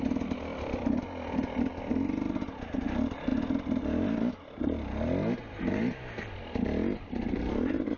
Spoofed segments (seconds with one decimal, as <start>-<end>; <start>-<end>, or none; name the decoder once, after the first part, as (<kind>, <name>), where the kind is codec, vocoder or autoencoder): none